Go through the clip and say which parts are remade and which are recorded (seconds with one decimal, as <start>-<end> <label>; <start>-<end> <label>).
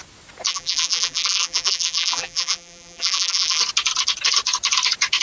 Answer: 0.0-0.5 recorded; 0.5-3.6 remade; 3.6-5.2 recorded